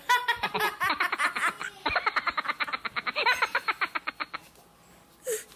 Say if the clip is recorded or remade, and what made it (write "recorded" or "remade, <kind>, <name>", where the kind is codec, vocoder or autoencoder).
recorded